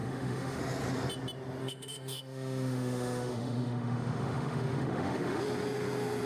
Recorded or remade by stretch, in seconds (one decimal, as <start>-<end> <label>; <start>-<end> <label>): 0.0-0.6 remade; 0.6-1.6 recorded; 1.6-5.4 remade; 5.4-6.3 recorded